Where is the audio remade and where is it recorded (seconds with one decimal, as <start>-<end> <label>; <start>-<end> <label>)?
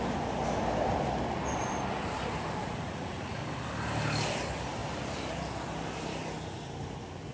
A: 0.0-2.6 recorded; 2.6-3.4 remade; 3.4-7.3 recorded